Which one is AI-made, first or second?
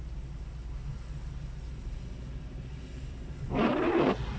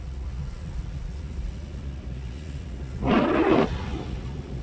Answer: second